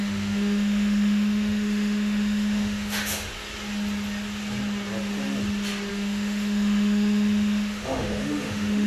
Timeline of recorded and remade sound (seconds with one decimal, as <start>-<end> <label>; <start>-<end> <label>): 0.0-3.3 remade; 3.3-5.9 recorded; 5.9-8.9 remade